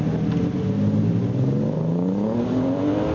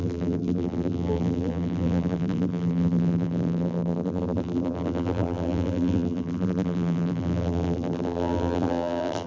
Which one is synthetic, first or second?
second